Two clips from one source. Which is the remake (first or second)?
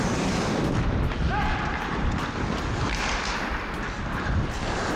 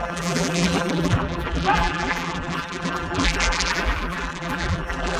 second